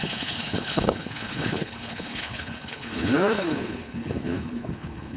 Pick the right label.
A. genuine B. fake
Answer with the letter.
B